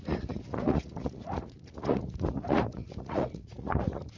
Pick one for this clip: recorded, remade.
remade